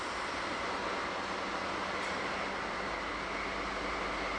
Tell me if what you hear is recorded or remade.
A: recorded